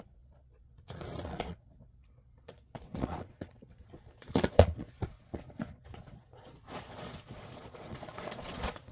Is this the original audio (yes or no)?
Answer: no